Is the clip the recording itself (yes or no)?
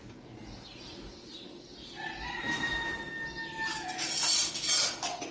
yes